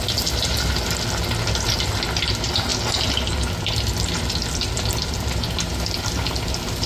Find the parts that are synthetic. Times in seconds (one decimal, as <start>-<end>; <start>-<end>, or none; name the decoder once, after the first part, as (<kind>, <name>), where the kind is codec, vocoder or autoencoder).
none